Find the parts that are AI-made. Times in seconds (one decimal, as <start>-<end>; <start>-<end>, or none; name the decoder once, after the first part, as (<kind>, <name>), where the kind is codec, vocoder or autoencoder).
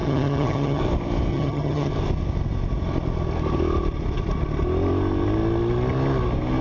0.0-0.8 (vocoder, HiFi-GAN); 1.3-1.9